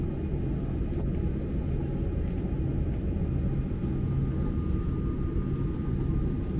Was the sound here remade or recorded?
recorded